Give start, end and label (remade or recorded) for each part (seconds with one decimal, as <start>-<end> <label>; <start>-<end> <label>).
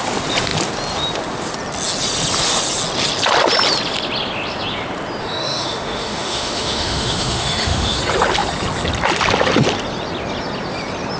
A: 0.0-5.2 recorded; 5.2-8.0 remade; 8.0-11.2 recorded